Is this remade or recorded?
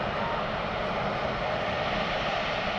recorded